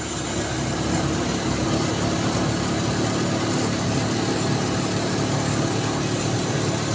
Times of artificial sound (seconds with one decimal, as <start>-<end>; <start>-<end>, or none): none